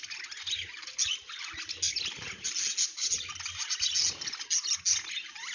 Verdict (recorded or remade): recorded